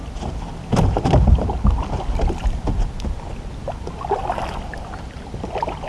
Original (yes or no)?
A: yes